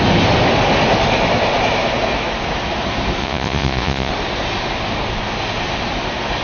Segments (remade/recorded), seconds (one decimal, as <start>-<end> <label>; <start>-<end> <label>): 0.0-3.2 recorded; 3.2-4.1 remade; 4.1-6.4 recorded

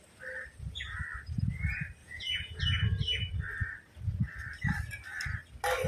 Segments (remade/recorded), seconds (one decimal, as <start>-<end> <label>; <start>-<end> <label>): 0.0-2.0 recorded; 2.0-2.6 remade; 2.6-5.9 recorded